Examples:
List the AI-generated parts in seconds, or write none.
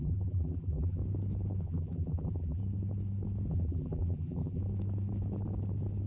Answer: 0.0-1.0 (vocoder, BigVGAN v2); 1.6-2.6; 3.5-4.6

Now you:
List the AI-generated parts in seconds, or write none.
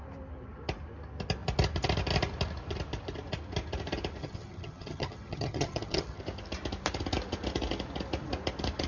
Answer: 4.2-6.2 (vocoder, HiFi-GAN)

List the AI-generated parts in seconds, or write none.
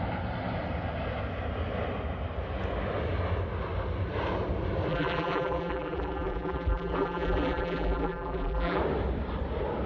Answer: 4.9-8.8 (vocoder, BigVGAN v2)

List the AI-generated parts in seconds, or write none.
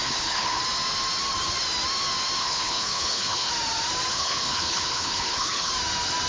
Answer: 0.0-0.6 (codec, HILCodec); 2.4-3.5; 4.1-5.7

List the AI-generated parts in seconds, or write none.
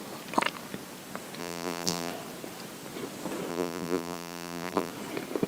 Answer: 1.4-2.1 (vocoder, BigVGAN v2); 3.5-4.9